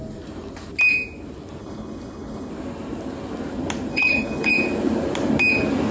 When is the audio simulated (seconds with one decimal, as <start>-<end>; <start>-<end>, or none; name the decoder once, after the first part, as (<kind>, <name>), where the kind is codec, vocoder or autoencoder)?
1.6-2.5 (codec, HILCodec); 3.9-4.5